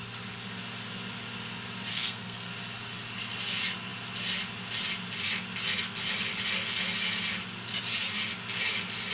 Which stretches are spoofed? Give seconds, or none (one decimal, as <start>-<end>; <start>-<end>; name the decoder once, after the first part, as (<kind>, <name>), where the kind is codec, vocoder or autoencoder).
1.9-2.5 (codec, SNAC)